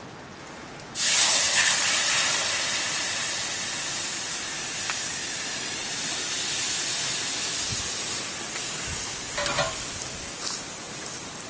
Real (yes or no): yes